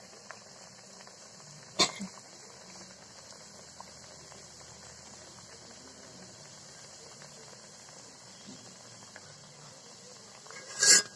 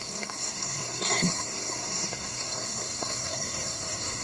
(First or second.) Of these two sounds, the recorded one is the first